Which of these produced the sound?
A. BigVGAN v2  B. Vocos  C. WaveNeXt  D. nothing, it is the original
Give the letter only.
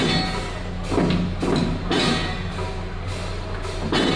D